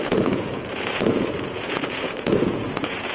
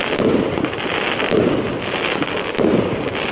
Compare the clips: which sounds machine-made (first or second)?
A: first